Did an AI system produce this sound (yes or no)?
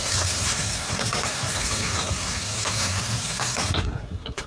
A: yes